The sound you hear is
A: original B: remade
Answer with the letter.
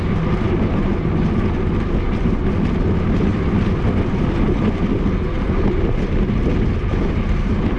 A